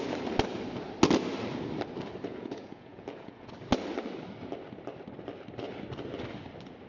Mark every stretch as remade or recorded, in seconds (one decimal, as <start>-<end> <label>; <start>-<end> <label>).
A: 0.0-2.3 recorded; 2.3-3.5 remade; 3.5-6.9 recorded